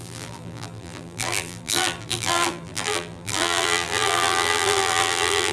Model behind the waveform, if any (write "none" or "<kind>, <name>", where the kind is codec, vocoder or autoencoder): vocoder, BigVGAN v2